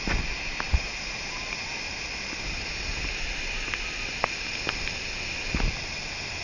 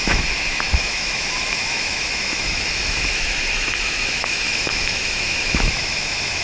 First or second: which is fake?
second